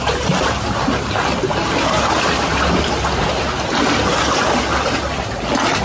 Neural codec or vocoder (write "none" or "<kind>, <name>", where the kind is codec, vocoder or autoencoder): none